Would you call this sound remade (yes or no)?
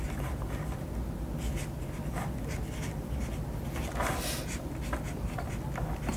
no